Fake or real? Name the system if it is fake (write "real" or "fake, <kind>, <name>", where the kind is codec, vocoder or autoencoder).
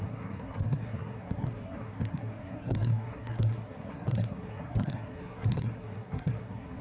fake, codec, SNAC